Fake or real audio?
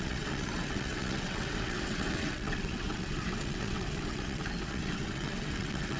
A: fake